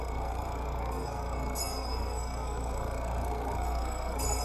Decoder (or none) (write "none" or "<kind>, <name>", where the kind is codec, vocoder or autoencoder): codec, SNAC